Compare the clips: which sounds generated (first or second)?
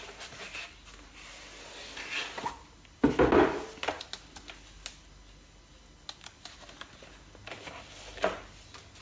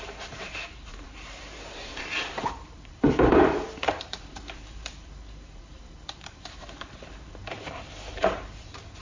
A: second